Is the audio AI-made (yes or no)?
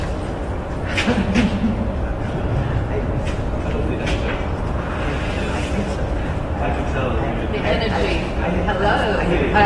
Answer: no